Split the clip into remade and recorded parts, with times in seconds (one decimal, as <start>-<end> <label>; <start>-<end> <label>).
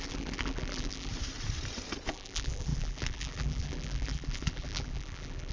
0.0-1.1 remade; 1.1-2.1 recorded; 2.1-5.5 remade